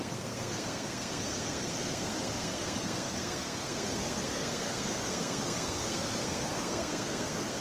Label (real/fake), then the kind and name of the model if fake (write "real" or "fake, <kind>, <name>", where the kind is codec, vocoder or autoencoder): fake, codec, SNAC